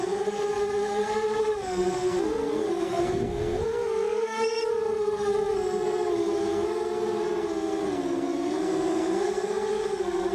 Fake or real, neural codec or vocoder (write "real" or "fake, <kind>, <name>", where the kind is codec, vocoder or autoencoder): fake, codec, SNAC